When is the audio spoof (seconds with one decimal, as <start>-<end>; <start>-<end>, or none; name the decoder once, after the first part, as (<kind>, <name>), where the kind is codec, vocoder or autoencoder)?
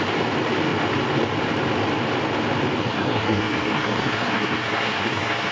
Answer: 2.8-5.5 (codec, SNAC)